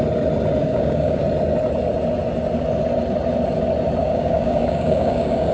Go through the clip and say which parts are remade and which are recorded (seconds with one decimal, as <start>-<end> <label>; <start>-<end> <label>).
0.0-0.6 recorded; 0.6-1.2 remade; 1.2-4.0 recorded; 4.0-5.5 remade